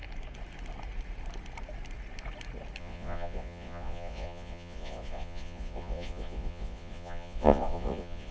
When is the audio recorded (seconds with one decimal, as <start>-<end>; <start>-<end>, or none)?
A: 0.0-2.8